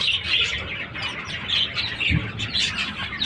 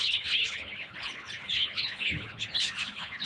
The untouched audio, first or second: first